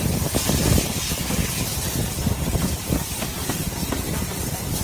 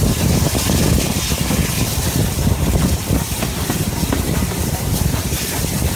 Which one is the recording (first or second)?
first